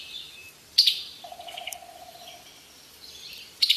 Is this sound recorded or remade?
remade